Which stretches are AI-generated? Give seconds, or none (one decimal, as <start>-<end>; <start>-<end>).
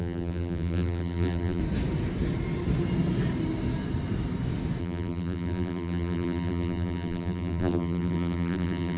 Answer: 0.0-1.6; 4.8-9.0